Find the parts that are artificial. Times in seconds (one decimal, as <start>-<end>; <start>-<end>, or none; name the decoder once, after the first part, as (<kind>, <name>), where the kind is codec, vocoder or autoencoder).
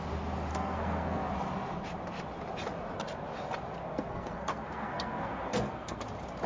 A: 0.5-1.3 (codec, SNAC); 3.8-6.0